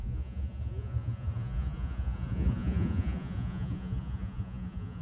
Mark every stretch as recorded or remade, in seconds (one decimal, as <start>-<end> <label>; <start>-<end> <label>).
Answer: 0.0-5.0 remade